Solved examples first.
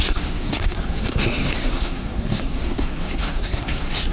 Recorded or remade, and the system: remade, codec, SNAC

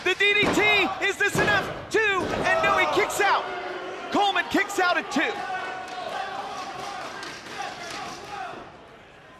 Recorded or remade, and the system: recorded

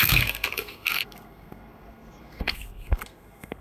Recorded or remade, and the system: remade, codec, SNAC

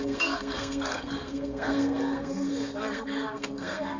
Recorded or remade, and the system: remade, codec, SNAC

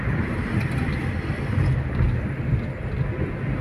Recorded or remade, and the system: recorded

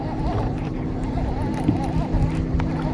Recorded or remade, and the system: recorded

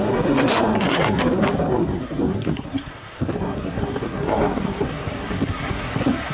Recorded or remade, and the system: remade, codec, SNAC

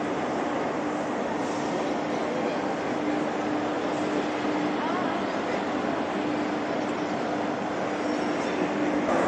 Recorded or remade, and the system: recorded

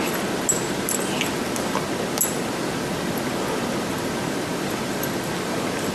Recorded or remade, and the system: recorded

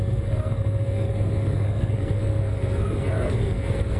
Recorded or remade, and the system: remade, codec, SNAC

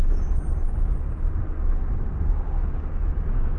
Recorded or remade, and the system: recorded